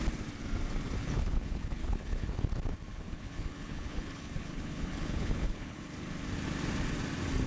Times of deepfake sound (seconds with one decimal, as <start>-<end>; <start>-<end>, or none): 1.0-2.5; 2.9-5.8